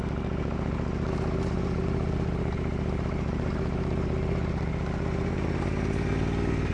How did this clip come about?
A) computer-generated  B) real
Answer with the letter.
B